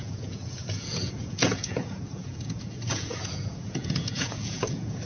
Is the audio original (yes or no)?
no